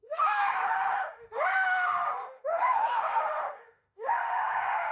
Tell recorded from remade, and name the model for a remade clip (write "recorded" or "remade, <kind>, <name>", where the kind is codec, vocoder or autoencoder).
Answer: remade, autoencoder, DAC-VAE